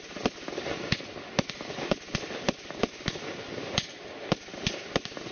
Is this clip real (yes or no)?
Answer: yes